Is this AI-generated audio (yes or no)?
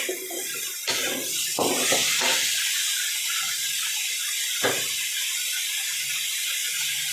no